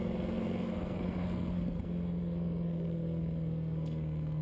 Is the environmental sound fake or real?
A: fake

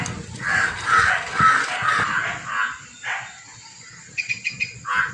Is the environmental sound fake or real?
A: real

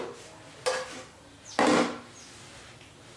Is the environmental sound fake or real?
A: real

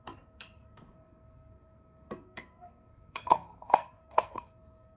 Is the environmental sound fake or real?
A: fake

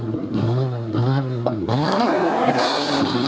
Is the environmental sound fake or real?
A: fake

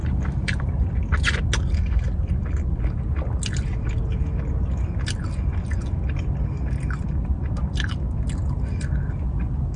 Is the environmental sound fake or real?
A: real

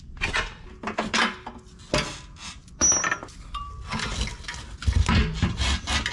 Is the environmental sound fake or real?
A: real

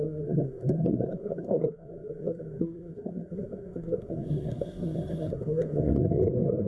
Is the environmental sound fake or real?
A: fake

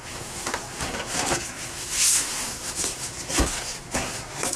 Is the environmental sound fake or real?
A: fake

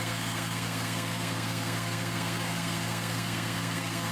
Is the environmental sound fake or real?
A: fake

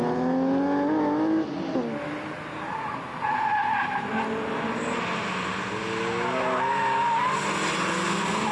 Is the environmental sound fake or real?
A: real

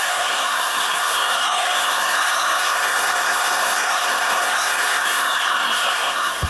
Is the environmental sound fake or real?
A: fake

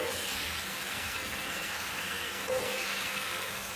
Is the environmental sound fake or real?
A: fake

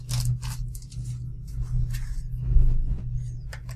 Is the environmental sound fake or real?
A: real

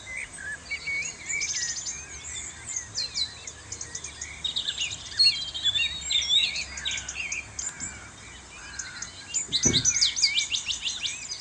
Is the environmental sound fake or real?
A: real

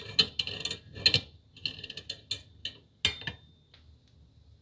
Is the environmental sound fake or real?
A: real